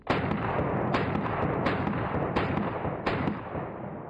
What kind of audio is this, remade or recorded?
recorded